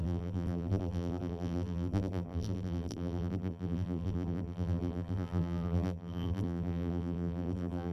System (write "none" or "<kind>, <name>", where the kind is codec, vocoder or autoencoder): vocoder, BigVGAN v2